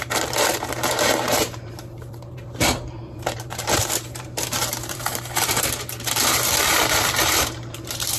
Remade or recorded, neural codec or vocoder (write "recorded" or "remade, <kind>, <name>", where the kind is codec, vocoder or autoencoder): remade, vocoder, BigVGAN v2